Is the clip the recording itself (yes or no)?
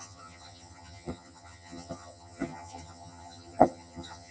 no